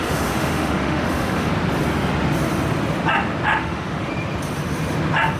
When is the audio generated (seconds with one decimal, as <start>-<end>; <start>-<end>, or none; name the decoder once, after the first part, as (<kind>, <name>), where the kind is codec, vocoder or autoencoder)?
0.0-1.5 (autoencoder, DAC-VAE); 3.6-4.1